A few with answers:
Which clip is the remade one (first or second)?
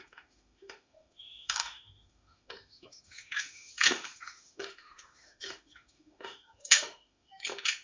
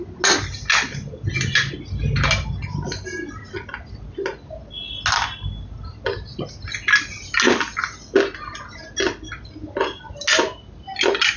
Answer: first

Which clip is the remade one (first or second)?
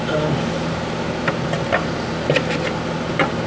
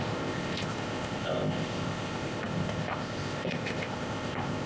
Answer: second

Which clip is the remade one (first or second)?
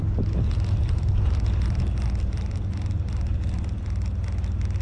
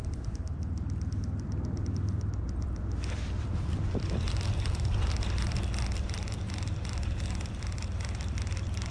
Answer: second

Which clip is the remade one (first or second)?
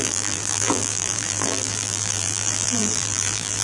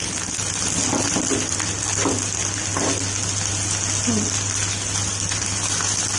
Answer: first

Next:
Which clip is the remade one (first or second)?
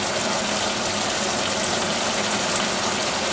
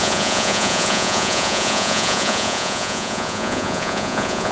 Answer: second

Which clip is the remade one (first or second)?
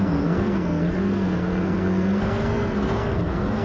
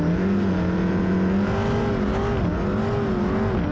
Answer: first